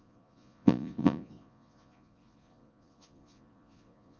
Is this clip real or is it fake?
fake